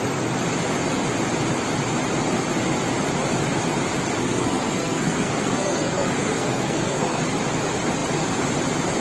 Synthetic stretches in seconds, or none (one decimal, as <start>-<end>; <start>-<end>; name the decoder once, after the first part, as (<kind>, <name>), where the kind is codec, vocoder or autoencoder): 4.2-7.2 (codec, SNAC)

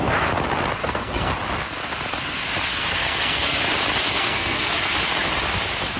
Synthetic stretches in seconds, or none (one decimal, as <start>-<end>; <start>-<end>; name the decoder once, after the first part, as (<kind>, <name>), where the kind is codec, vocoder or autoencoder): 0.8-1.3 (codec, SNAC); 2.7-3.6; 4.1-4.9

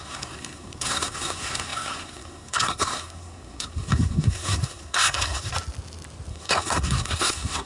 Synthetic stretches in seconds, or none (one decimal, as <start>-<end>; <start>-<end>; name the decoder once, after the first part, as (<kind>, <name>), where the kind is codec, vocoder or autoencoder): 0.0-5.5 (codec, SNAC); 6.3-7.7

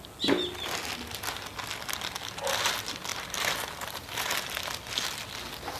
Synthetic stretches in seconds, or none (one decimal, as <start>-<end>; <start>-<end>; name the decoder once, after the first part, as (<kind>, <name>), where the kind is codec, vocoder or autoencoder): none